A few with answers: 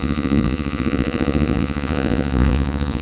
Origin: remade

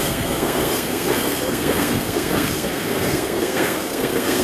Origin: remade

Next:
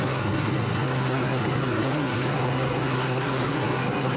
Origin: remade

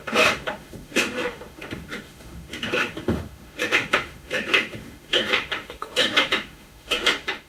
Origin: remade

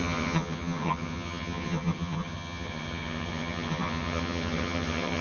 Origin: remade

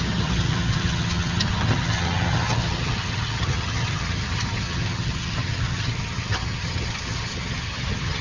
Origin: remade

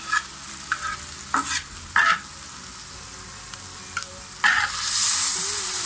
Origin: recorded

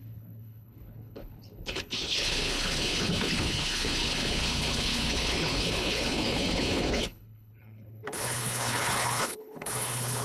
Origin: remade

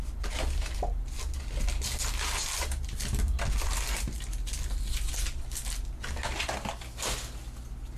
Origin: recorded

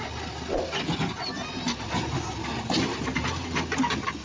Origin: recorded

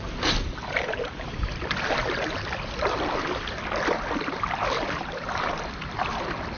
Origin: recorded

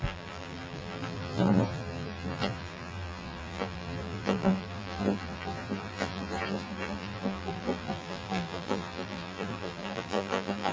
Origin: remade